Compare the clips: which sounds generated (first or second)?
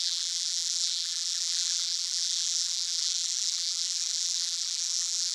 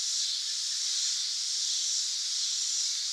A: first